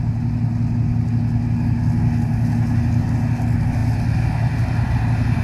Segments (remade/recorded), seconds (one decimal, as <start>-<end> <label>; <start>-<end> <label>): 0.0-5.4 recorded